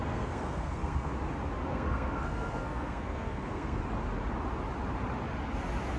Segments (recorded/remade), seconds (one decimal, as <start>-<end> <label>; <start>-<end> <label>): 0.0-1.1 remade; 1.1-1.7 recorded; 1.7-3.8 remade; 3.8-6.0 recorded